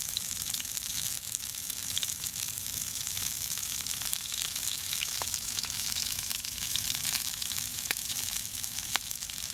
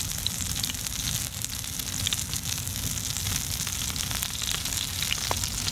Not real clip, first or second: first